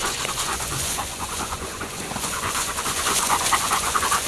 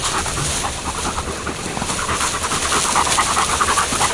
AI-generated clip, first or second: first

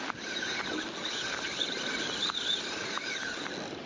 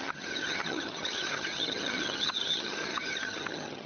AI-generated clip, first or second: second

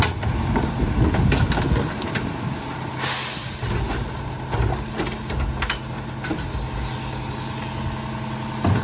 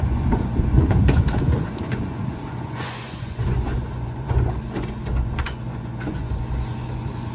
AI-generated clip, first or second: second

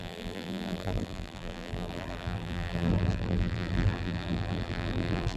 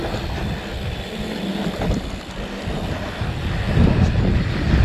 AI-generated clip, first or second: first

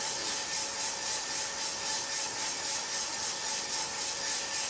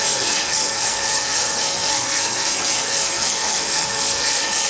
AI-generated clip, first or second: second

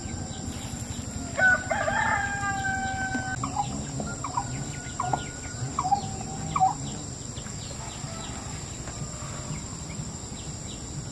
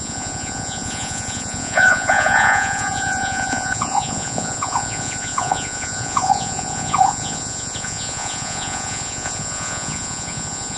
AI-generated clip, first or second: second